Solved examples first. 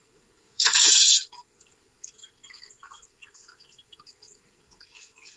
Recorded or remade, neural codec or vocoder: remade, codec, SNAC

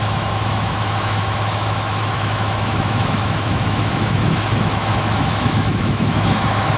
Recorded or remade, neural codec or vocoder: remade, autoencoder, DAC-VAE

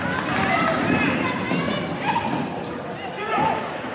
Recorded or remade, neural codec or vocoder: recorded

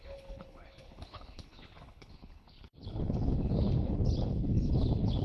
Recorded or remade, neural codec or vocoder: remade, codec, HILCodec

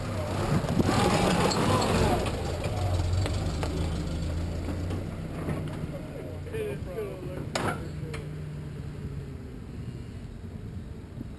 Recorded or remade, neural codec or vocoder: recorded